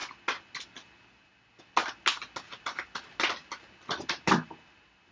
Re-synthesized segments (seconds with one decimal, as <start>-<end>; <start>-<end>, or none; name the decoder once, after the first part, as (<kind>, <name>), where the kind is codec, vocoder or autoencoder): none